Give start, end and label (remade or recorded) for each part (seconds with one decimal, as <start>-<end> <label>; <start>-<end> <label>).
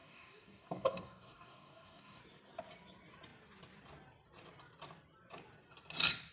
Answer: 0.0-2.2 remade; 2.2-6.3 recorded